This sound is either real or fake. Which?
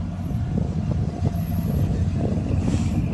real